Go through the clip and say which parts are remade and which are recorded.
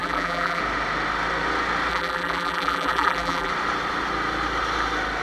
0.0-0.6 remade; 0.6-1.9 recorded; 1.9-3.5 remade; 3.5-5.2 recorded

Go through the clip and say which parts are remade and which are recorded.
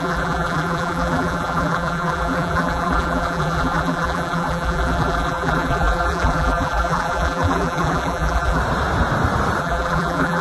0.0-8.6 remade; 8.6-9.6 recorded; 9.6-10.4 remade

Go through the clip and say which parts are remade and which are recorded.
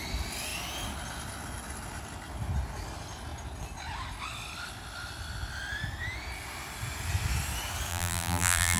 0.0-7.9 recorded; 7.9-8.8 remade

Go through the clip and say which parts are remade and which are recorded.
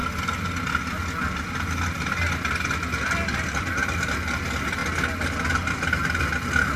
0.0-6.8 recorded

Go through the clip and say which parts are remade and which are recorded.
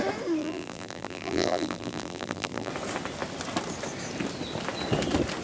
0.0-0.4 recorded; 0.4-2.7 remade; 2.7-5.4 recorded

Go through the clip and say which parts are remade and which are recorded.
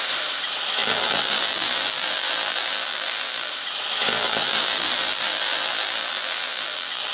0.0-0.8 recorded; 0.8-3.5 remade; 3.5-4.1 recorded; 4.1-7.1 remade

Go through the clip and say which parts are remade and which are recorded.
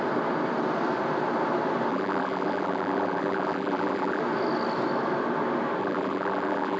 0.0-1.9 recorded; 1.9-4.2 remade; 4.2-5.8 recorded; 5.8-6.8 remade